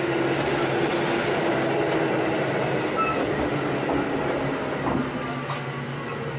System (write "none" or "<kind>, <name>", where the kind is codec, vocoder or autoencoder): none